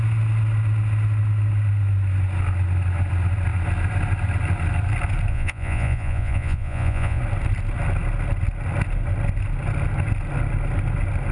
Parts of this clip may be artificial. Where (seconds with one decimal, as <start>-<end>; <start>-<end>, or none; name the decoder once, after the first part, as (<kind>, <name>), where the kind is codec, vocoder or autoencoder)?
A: 5.3-7.2 (vocoder, Vocos)